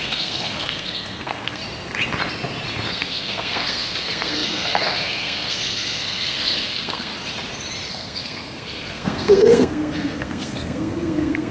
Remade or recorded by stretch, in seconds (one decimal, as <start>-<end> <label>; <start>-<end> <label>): 0.0-1.6 remade; 1.6-2.9 recorded; 2.9-7.1 remade; 7.1-7.9 recorded; 7.9-11.5 remade